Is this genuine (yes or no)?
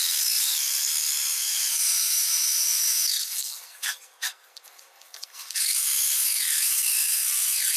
no